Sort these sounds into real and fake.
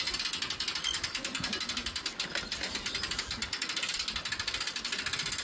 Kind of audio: real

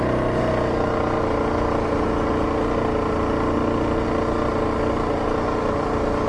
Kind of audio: real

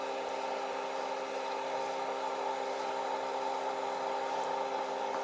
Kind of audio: real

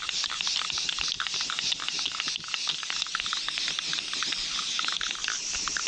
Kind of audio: real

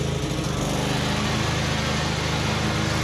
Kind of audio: real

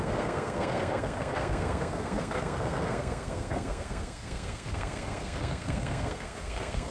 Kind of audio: fake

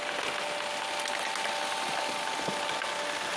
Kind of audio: real